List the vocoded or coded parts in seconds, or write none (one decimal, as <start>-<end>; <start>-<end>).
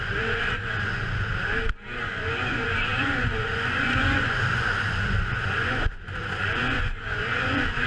0.0-1.3; 2.0-7.9